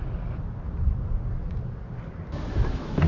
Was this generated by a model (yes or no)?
no